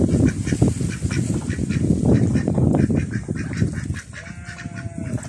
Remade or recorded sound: recorded